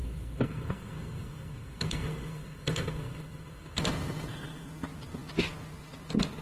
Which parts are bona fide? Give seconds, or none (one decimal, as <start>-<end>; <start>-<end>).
3.8-6.4